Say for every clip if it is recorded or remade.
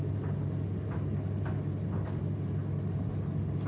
recorded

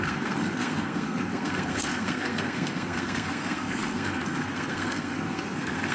remade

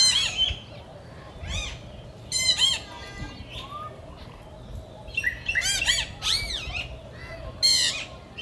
recorded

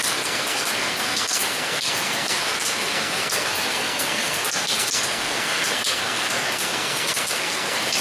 remade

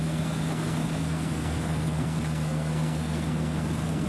remade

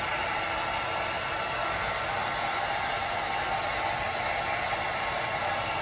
recorded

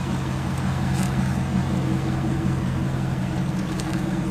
remade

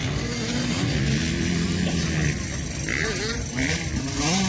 recorded